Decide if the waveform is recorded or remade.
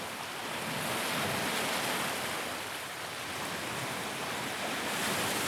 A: recorded